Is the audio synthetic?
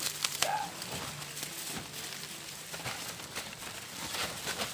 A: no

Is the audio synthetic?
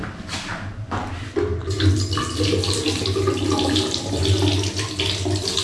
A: no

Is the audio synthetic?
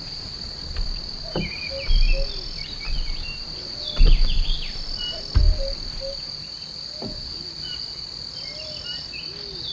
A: no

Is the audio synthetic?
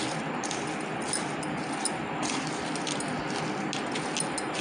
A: no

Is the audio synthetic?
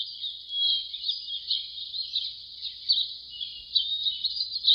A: no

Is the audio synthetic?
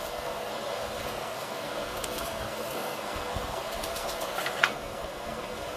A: yes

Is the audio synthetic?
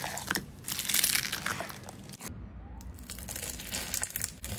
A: no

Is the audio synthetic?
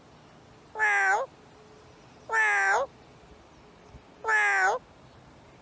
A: no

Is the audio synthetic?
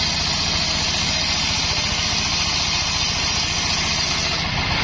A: no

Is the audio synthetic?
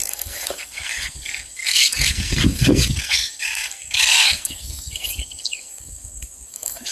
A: yes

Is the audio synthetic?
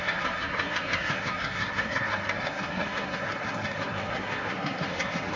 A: yes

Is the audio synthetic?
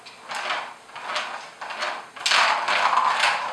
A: no